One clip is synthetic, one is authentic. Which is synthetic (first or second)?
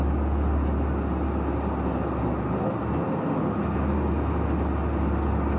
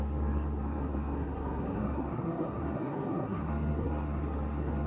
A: second